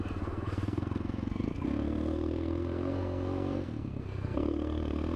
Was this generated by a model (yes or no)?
yes